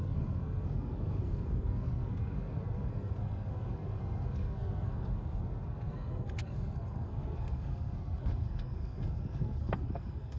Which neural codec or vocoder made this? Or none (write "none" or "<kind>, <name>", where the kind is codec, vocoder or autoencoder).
codec, SNAC